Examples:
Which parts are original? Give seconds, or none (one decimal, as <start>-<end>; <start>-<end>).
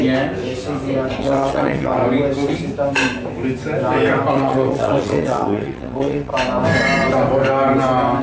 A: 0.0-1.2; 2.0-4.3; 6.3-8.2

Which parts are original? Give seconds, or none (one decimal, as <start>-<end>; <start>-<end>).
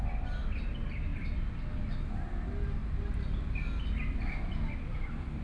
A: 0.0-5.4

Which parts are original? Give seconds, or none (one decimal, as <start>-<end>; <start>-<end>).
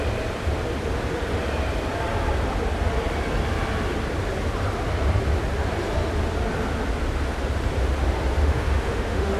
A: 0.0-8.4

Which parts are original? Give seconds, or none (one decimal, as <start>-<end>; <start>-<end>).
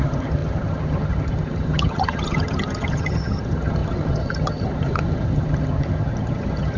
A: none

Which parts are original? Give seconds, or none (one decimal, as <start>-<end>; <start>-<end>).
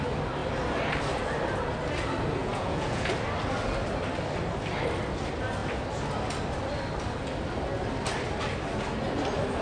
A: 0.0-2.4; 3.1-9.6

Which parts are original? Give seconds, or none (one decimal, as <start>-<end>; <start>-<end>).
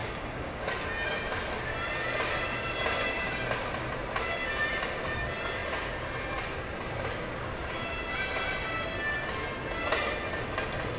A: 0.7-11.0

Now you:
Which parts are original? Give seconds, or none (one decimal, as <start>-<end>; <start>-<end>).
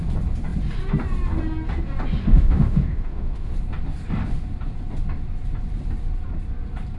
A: 0.0-2.2; 3.5-7.0